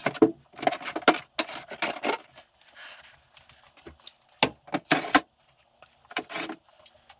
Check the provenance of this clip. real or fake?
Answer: real